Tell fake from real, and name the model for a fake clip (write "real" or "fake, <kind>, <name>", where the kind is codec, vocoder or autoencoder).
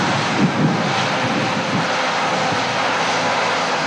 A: real